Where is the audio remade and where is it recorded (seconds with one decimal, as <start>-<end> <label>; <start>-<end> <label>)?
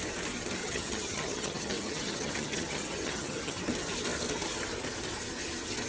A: 0.0-0.6 recorded; 0.6-3.6 remade; 3.6-5.9 recorded